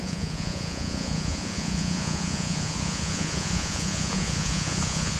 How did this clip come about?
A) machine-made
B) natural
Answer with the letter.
A